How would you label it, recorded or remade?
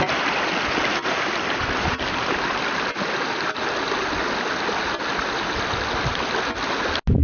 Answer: recorded